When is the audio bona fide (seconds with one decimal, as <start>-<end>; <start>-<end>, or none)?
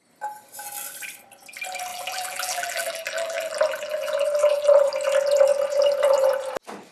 0.0-1.9; 4.8-6.9